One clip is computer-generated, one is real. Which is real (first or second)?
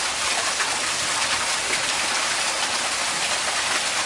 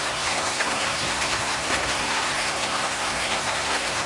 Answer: first